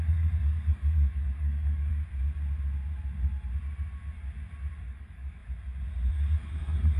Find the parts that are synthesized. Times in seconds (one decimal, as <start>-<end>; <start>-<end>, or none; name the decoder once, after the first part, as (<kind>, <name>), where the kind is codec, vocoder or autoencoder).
0.0-1.9 (codec, DAC); 4.8-5.4; 6.1-7.0